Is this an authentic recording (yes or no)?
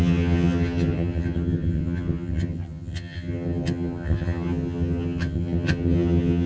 no